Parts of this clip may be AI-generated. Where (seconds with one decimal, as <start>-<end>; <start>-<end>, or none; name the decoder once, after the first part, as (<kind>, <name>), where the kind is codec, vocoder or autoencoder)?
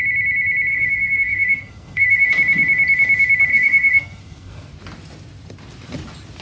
0.7-2.3 (codec, SNAC); 3.5-4.7